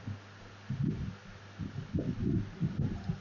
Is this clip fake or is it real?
real